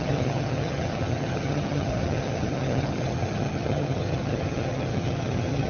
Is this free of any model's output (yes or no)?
no